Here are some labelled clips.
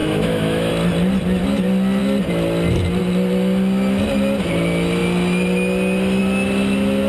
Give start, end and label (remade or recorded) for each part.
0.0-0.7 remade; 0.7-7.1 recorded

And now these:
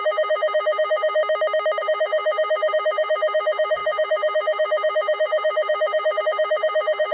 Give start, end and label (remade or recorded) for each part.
0.0-1.2 remade; 1.2-1.8 recorded; 1.8-7.1 remade